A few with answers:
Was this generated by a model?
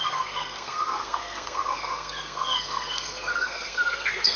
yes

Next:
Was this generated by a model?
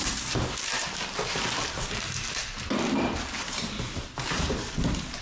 no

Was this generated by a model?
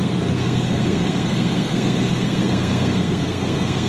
yes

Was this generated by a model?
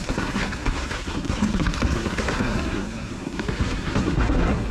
yes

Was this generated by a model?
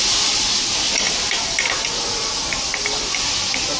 no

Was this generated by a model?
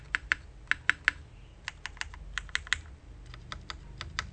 no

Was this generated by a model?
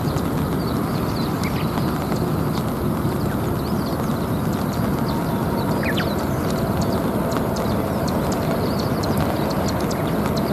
no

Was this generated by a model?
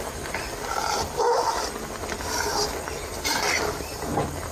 no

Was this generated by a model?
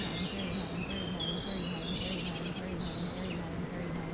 no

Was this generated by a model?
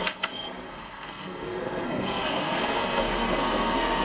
yes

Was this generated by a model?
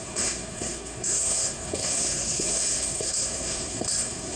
yes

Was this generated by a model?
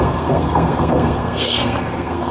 yes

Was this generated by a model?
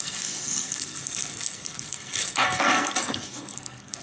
yes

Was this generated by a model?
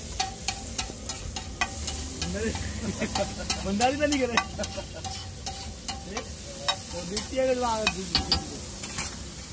no